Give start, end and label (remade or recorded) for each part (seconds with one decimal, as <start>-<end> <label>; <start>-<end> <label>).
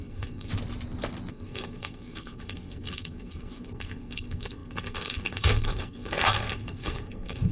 0.0-0.5 remade; 0.5-1.3 recorded; 1.3-7.5 remade